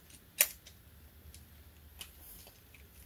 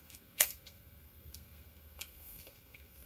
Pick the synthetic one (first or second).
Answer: second